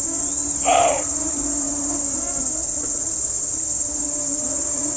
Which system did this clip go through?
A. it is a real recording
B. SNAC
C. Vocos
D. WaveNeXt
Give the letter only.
A